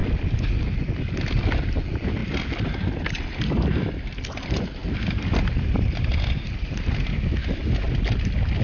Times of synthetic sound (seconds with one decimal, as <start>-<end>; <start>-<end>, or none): none